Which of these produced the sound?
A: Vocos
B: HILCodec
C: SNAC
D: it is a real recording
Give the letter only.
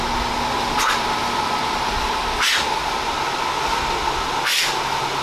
D